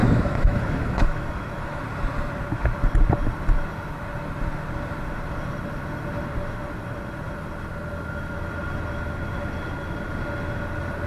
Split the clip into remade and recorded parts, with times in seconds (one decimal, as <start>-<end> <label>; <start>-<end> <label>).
0.0-1.8 remade; 1.8-11.1 recorded